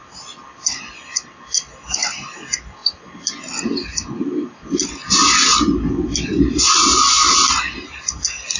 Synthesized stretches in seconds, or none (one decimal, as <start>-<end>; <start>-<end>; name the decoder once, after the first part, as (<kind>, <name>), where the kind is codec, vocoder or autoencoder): none